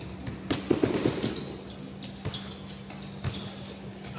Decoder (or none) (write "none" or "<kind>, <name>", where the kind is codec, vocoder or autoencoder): none